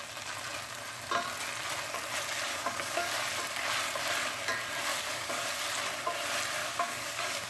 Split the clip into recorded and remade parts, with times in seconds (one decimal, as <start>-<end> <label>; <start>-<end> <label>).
0.0-2.5 recorded; 2.5-3.1 remade; 3.1-4.9 recorded; 4.9-5.5 remade; 5.5-6.6 recorded; 6.6-7.5 remade